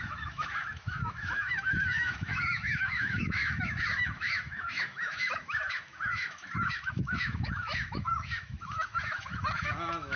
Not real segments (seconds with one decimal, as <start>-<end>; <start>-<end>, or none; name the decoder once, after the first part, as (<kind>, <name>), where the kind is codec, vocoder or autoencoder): 0.0-10.2 (autoencoder, DAC-VAE)